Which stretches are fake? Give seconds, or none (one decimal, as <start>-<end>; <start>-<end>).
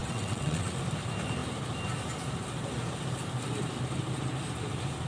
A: 0.0-0.8